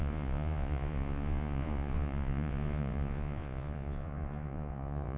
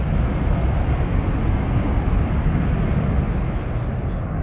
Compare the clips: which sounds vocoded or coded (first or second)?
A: first